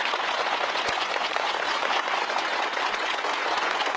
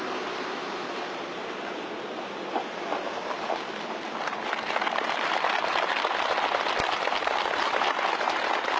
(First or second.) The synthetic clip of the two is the first